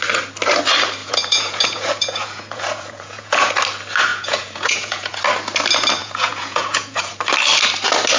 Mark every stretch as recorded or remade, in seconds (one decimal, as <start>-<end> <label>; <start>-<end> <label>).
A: 0.0-1.0 recorded; 1.0-3.5 remade; 3.5-4.1 recorded; 4.1-5.2 remade; 5.2-6.0 recorded; 6.0-7.1 remade; 7.1-8.2 recorded